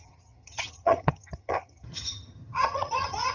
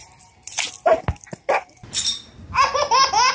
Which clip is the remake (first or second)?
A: first